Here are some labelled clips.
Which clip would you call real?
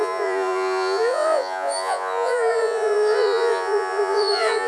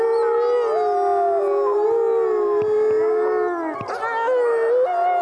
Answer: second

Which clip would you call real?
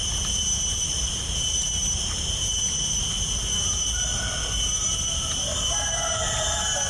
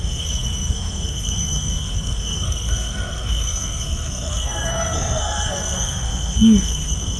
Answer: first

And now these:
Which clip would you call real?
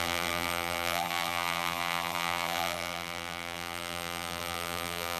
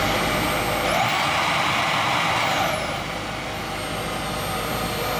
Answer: second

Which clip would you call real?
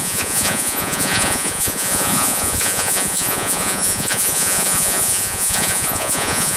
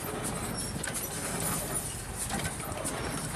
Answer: second